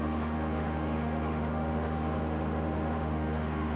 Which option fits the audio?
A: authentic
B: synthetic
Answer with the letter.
B